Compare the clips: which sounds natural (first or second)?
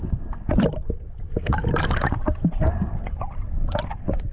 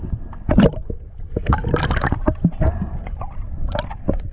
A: second